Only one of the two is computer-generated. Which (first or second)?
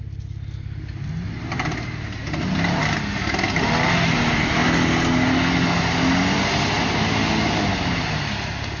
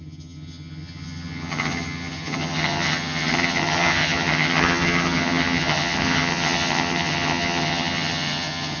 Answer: second